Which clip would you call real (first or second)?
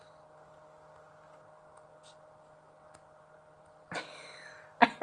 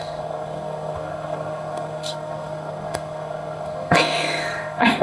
first